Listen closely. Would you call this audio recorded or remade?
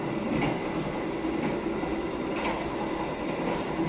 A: recorded